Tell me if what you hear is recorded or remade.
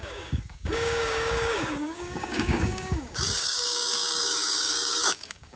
remade